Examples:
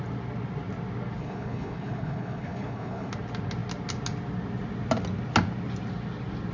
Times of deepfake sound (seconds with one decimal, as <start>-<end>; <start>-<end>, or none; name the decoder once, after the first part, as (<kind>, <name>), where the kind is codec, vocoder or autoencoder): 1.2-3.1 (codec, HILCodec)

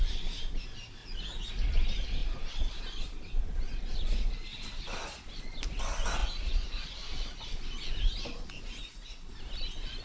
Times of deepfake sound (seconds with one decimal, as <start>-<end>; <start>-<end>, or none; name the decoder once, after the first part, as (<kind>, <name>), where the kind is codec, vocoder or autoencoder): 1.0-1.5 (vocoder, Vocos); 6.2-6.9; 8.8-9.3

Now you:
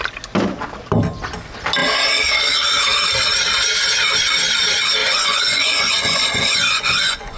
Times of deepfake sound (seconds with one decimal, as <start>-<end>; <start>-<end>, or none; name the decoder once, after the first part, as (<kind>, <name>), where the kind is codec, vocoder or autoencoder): 5.0-7.4 (vocoder, Vocos)